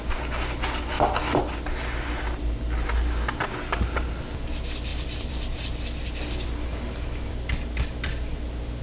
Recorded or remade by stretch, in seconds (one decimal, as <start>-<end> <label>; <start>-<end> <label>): 0.0-3.7 recorded; 3.7-4.2 remade; 4.2-4.9 recorded; 4.9-5.6 remade; 5.6-8.8 recorded

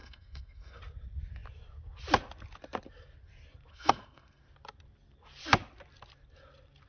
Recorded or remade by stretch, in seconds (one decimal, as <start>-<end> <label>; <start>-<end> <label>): 0.0-0.8 remade; 0.8-3.7 recorded; 3.7-4.4 remade; 4.4-6.9 recorded